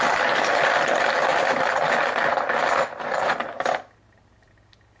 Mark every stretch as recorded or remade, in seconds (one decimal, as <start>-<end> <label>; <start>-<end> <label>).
0.0-5.0 recorded